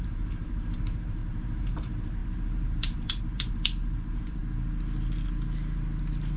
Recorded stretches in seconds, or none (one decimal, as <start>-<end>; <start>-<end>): 4.4-6.4